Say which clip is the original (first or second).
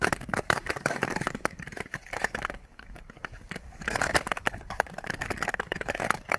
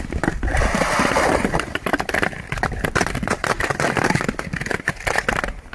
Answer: second